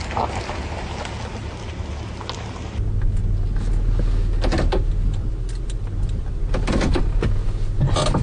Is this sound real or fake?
real